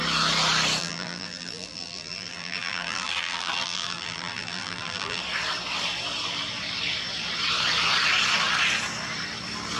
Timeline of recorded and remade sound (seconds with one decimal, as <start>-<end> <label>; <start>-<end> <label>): 0.0-0.8 recorded; 0.8-5.2 remade; 5.2-9.8 recorded